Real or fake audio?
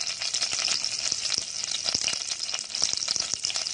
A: real